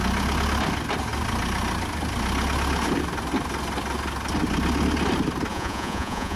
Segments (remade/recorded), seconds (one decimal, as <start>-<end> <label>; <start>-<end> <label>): 0.0-5.5 recorded; 5.5-6.4 remade